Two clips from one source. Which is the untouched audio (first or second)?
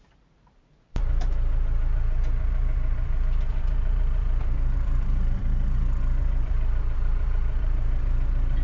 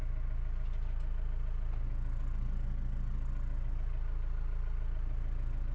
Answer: second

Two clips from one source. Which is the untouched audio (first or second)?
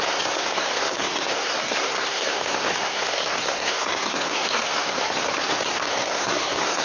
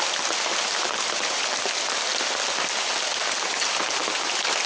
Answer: second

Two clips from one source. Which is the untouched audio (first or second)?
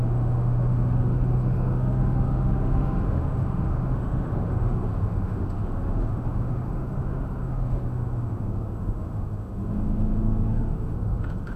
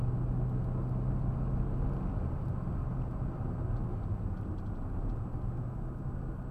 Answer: second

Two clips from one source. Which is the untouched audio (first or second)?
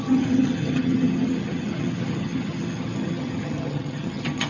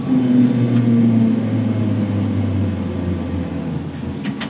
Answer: second